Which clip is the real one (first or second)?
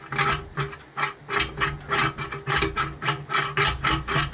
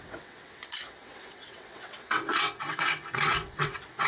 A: first